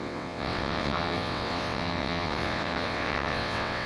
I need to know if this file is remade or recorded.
remade